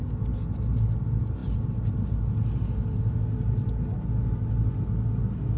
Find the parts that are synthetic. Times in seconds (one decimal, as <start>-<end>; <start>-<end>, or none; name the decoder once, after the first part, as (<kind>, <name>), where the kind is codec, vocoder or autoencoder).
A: none